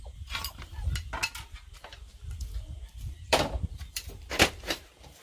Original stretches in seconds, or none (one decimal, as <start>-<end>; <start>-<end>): 0.0-2.1